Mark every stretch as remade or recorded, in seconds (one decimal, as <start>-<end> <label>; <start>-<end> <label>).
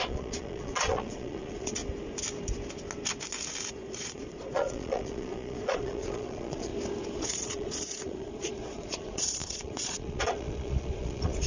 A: 0.0-1.8 remade; 1.8-3.7 recorded; 3.7-6.7 remade; 6.7-7.2 recorded; 7.2-11.5 remade